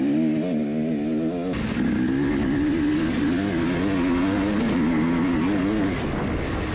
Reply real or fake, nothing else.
real